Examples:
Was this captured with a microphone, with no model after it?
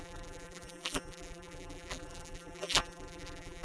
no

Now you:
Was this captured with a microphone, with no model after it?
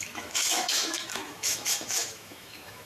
no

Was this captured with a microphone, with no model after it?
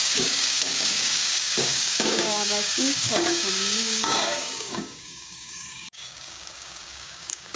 no